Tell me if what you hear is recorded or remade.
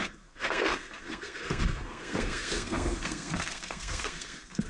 remade